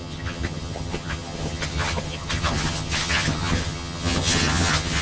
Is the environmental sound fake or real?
fake